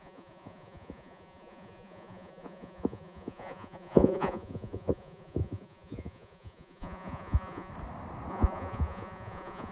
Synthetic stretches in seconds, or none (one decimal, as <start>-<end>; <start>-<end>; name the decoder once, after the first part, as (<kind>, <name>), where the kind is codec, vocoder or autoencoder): 0.0-7.7 (vocoder, Vocos); 8.3-9.7